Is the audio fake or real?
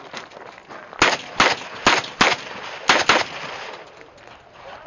real